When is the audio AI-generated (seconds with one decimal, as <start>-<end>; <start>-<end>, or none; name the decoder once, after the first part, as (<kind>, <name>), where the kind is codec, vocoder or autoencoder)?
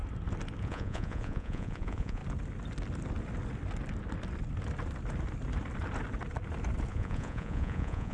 0.6-2.2 (vocoder, Vocos); 6.9-8.1